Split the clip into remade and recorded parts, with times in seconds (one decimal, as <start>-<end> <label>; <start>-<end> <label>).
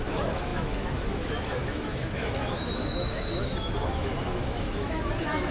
0.0-5.5 remade